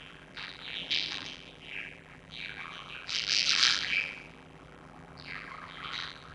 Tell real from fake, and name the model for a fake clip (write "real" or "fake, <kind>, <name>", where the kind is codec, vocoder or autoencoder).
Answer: fake, vocoder, BigVGAN v2